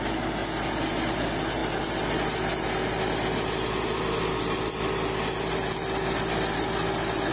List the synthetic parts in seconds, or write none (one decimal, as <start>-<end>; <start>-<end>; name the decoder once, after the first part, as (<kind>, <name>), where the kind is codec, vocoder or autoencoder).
none